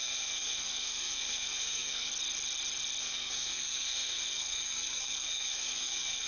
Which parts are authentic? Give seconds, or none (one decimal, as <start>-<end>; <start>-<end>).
2.1-3.0